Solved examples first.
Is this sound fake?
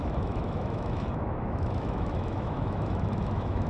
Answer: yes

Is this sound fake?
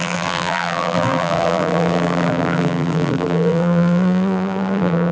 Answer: yes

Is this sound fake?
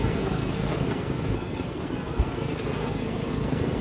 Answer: yes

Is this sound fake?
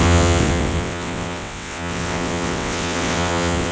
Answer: yes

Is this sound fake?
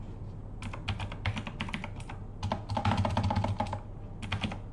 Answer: no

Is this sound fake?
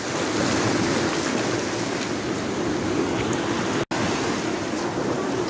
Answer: no